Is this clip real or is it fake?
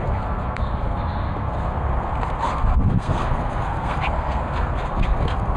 fake